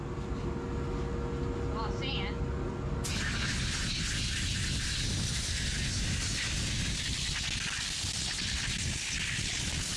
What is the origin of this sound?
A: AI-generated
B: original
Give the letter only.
B